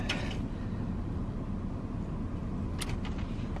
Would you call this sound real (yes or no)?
yes